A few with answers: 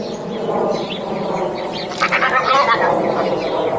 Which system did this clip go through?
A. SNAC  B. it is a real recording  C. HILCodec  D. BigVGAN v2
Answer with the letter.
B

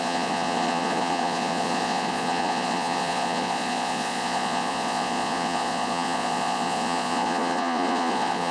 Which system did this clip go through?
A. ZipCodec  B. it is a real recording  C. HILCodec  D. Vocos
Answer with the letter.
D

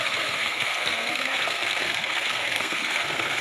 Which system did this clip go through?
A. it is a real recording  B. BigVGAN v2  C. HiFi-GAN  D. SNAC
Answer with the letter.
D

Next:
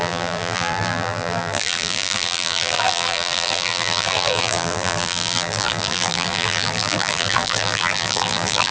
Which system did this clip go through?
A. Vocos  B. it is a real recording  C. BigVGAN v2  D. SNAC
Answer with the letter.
C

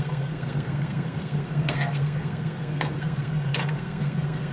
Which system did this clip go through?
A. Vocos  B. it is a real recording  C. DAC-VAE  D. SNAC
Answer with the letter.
D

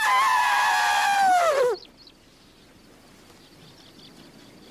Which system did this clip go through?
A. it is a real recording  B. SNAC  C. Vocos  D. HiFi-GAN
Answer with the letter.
A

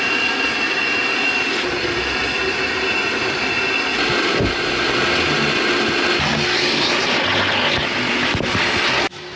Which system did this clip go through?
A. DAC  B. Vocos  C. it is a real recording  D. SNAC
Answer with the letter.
C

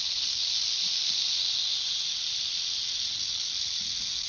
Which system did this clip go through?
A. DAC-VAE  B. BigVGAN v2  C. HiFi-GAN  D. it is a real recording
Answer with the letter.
D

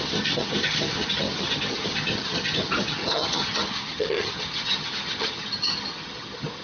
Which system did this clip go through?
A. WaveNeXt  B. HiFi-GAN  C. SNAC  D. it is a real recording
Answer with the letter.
B